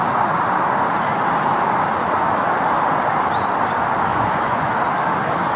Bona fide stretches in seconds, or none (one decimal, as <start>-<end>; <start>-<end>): 0.0-4.1; 4.7-5.6